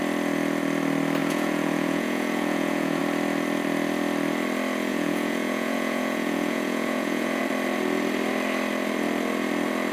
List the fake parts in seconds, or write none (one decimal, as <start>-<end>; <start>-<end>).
1.2-3.0; 4.9-7.4